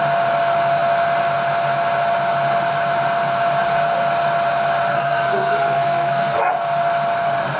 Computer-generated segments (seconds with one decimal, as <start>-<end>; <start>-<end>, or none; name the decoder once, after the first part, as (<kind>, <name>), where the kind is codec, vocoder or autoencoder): 4.9-6.5 (codec, SNAC)